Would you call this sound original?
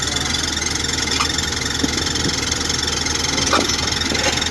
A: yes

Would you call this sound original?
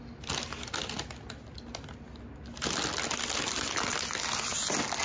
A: yes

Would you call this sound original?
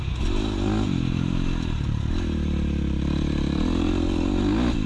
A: yes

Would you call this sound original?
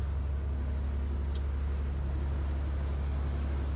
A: yes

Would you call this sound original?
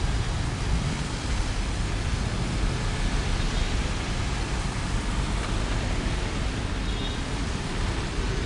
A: yes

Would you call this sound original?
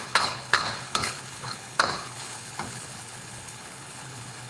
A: no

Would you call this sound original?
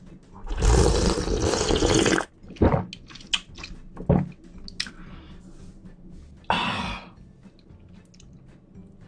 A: yes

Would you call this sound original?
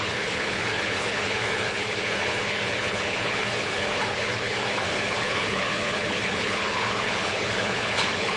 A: no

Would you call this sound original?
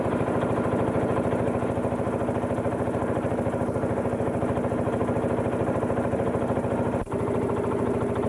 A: yes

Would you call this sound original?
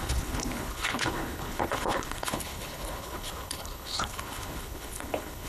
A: no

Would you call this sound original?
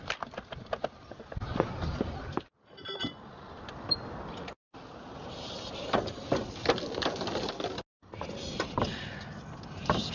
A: yes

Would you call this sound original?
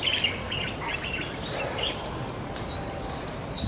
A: yes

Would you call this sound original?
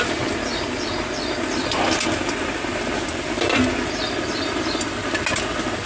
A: yes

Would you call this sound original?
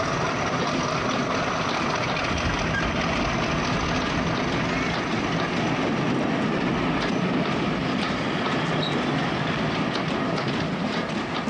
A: yes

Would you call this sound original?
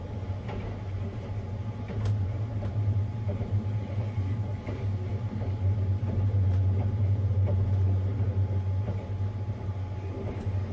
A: yes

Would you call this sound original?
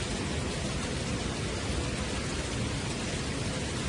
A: yes